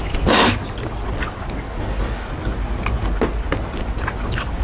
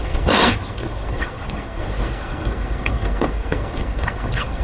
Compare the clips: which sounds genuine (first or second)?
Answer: first